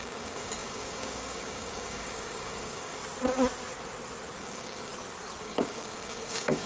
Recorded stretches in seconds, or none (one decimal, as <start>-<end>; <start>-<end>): 3.0-4.4; 4.9-5.4